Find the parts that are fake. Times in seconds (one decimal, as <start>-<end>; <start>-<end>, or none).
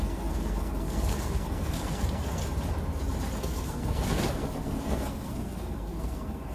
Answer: 0.0-2.4; 3.4-6.5